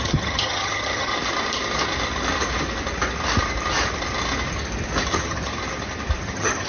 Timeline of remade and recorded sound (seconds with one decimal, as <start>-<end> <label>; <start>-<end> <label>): 0.0-1.1 remade; 1.1-5.1 recorded; 5.1-5.5 remade; 5.5-6.2 recorded; 6.2-6.7 remade